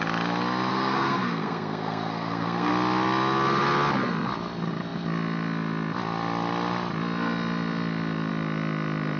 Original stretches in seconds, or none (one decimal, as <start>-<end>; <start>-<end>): 0.0-0.7; 2.7-9.2